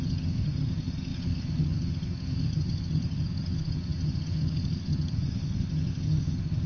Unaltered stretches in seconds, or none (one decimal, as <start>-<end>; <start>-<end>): none

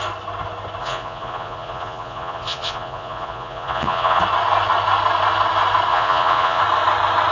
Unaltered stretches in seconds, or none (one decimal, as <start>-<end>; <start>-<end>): 0.0-0.8; 4.2-5.9; 6.6-7.3